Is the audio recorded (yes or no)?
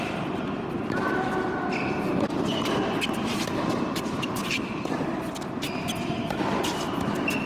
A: yes